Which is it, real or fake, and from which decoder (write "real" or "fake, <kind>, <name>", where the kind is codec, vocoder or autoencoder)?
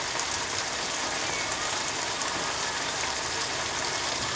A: fake, vocoder, BigVGAN v2